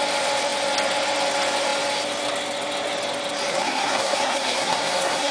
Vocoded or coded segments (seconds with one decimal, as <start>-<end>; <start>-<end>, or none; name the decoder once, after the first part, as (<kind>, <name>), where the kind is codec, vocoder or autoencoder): 3.5-5.3 (codec, SNAC)